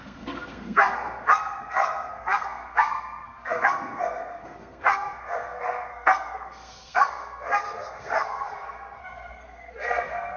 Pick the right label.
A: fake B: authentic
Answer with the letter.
A